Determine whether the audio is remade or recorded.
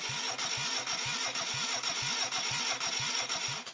recorded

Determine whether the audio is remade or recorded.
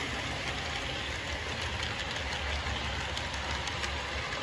recorded